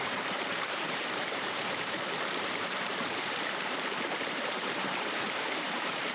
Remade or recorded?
remade